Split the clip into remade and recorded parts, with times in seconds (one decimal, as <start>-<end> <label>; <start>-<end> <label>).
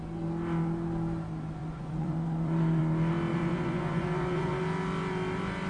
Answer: 0.0-1.6 recorded; 1.6-2.8 remade; 2.8-3.3 recorded; 3.3-4.6 remade; 4.6-5.7 recorded